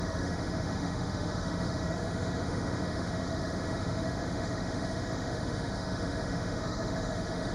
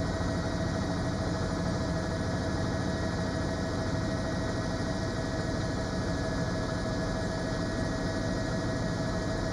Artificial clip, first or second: first